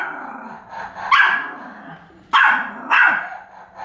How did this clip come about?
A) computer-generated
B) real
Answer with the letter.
B